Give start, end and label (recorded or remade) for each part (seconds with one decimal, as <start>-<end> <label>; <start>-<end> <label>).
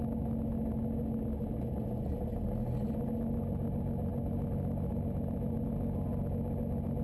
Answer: 0.0-7.0 recorded